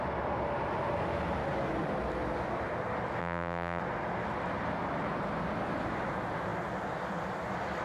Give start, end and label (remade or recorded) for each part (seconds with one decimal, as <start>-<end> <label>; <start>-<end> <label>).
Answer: 0.0-3.2 recorded; 3.2-3.8 remade; 3.8-7.8 recorded